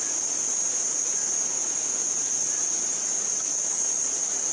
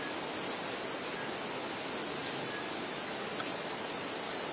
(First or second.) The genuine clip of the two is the second